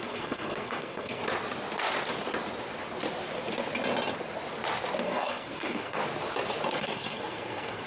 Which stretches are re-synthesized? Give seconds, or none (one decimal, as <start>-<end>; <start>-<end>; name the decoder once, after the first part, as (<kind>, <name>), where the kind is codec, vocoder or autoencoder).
0.0-1.2 (codec, SNAC); 5.0-6.0; 6.7-7.9